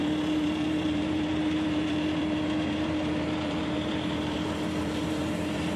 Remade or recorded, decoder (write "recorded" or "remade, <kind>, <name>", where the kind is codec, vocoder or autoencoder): remade, vocoder, BigVGAN v2